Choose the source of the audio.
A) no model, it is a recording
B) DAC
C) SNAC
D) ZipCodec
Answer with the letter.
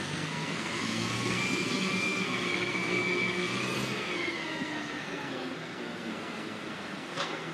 C